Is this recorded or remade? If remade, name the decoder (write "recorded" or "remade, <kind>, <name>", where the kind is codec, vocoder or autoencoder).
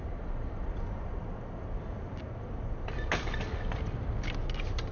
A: recorded